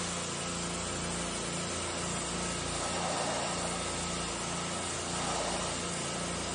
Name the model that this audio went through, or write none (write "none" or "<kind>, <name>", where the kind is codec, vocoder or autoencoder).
none